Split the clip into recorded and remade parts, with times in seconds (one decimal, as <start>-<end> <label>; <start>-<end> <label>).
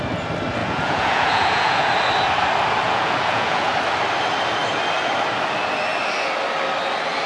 0.0-0.6 recorded; 0.6-1.9 remade; 1.9-2.8 recorded; 2.8-3.7 remade; 3.7-7.3 recorded